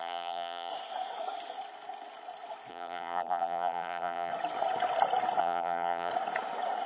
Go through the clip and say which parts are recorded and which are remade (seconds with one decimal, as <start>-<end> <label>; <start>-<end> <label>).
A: 0.0-0.7 remade; 0.7-2.7 recorded; 2.7-4.3 remade; 4.3-5.4 recorded; 5.4-6.1 remade; 6.1-6.9 recorded